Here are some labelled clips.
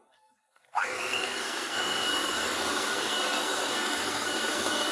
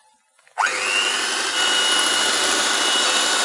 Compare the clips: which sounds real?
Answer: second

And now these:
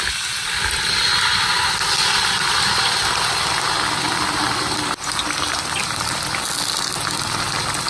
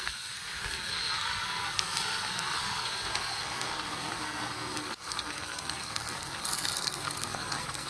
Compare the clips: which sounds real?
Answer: first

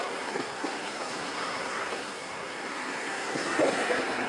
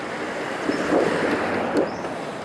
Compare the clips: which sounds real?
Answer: second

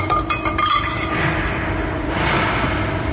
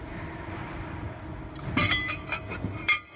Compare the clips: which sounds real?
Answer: second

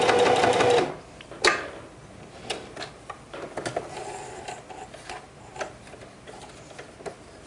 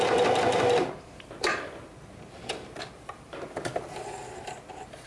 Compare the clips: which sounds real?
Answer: first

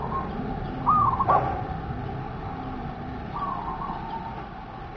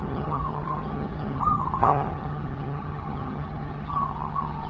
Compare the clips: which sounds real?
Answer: first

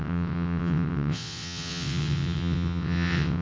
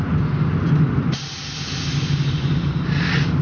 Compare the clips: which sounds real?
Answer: second